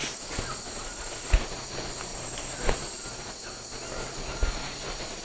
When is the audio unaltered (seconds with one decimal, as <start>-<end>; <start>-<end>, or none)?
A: 0.0-5.2